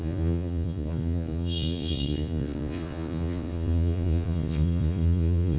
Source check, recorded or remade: remade